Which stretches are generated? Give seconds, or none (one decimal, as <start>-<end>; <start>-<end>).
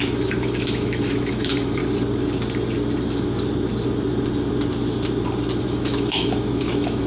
0.0-1.8; 5.6-7.1